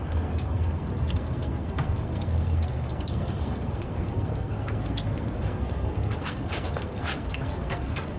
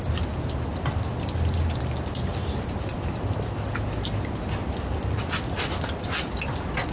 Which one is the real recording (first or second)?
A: second